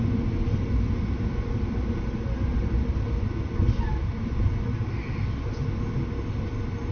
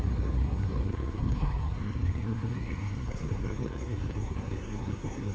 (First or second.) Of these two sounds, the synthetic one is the second